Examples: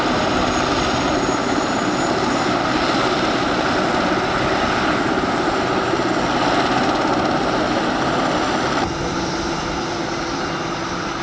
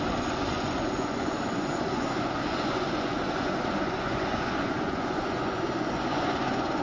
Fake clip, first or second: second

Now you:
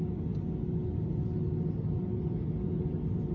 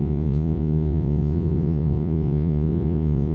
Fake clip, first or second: second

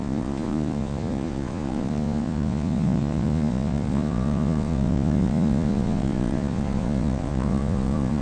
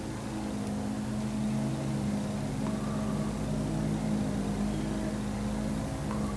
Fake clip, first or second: first